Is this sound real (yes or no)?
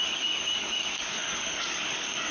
no